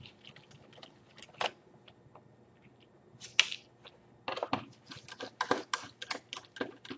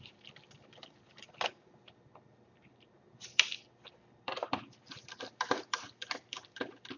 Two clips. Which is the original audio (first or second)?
first